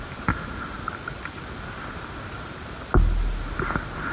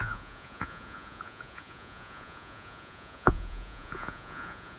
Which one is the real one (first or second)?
first